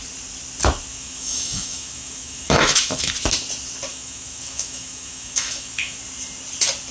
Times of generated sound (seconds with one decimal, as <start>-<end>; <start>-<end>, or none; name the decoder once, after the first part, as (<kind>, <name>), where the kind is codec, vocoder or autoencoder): 0.9-3.1 (autoencoder, DAC-VAE); 3.9-6.0

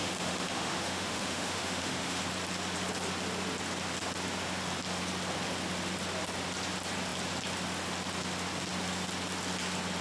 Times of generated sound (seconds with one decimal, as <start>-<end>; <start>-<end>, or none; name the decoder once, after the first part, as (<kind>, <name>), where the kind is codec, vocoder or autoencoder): 0.0-2.2 (autoencoder, DAC-VAE)

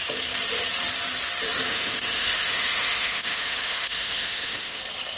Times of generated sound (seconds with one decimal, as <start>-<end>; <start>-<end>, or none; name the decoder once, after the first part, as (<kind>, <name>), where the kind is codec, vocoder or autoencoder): 1.7-4.8 (autoencoder, DAC-VAE)

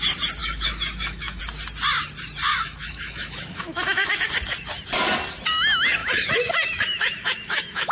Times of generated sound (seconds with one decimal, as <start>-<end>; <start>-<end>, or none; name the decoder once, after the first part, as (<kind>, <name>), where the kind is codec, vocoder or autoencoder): 0.4-1.4 (autoencoder, DAC-VAE); 2.5-4.3; 6.0-7.9

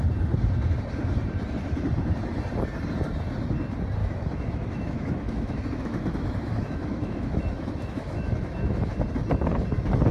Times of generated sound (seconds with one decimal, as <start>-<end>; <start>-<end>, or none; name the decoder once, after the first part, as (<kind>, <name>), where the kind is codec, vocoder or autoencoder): 4.0-9.0 (autoencoder, DAC-VAE)